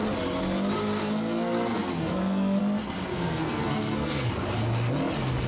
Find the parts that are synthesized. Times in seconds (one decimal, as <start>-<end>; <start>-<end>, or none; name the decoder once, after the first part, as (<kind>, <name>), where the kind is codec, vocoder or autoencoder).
1.0-2.6 (codec, SNAC); 3.1-4.3